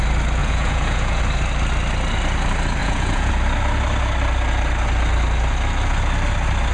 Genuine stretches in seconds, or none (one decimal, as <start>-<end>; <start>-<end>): 0.0-0.4; 1.2-2.8; 3.3-6.7